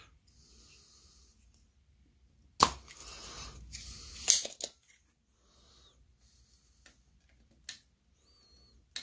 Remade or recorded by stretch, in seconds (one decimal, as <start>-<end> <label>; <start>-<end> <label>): 0.0-9.0 recorded